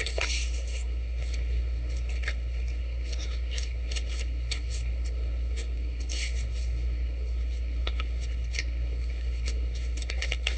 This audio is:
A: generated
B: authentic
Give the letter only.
A